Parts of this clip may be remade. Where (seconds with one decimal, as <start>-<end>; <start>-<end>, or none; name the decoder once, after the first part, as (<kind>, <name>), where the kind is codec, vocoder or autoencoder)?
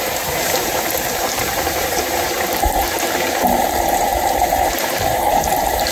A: 0.0-5.9 (vocoder, BigVGAN v2)